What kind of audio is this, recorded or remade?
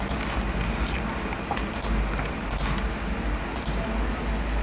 recorded